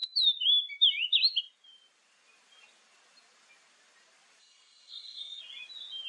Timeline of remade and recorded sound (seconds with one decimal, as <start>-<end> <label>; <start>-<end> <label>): 0.0-4.4 recorded; 4.4-5.4 remade; 5.4-6.1 recorded

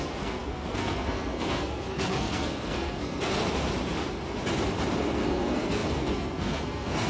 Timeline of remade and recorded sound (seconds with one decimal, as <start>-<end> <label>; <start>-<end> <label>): 0.0-3.4 remade; 3.4-5.0 recorded; 5.0-7.1 remade